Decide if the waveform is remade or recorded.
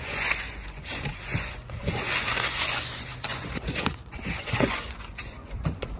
remade